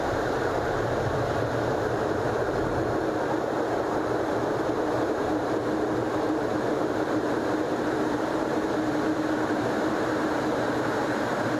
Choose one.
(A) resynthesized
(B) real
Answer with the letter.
A